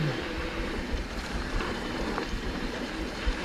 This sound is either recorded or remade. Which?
remade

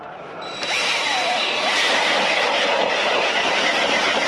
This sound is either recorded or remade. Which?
remade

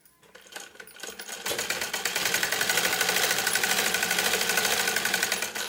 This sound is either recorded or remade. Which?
recorded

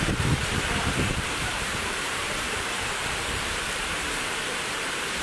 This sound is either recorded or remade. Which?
remade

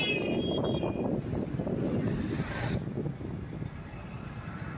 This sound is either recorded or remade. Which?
recorded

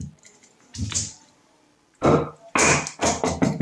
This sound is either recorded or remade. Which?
recorded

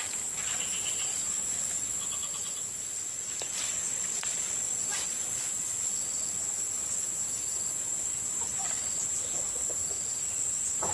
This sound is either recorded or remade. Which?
recorded